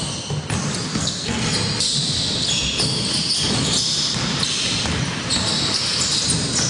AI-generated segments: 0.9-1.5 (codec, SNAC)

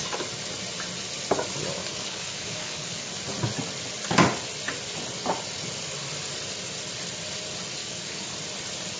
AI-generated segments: 1.8-3.1 (codec, DAC); 7.8-8.3

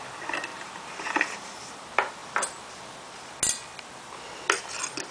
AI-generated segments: 0.5-1.7 (vocoder, BigVGAN v2)